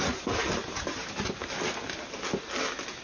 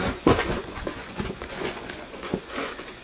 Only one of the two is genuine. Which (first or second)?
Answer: first